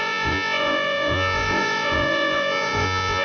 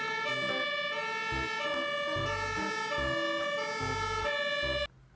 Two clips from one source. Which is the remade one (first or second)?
first